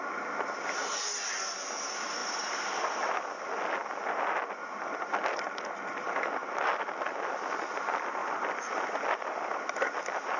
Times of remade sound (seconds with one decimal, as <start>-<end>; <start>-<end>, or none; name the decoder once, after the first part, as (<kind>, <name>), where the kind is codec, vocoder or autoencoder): 2.2-3.1 (vocoder, BigVGAN v2); 6.4-7.4; 8.2-8.7